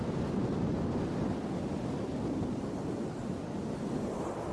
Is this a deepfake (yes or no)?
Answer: yes